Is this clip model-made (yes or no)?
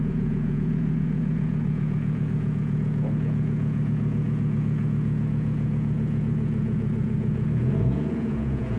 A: yes